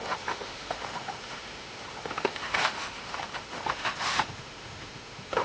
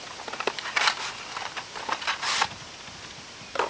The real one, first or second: second